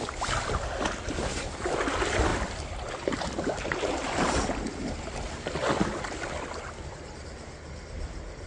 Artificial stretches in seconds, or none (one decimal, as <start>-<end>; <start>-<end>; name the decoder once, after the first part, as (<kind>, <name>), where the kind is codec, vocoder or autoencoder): none